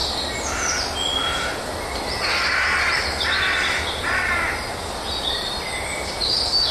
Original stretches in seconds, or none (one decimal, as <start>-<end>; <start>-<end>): 0.0-6.7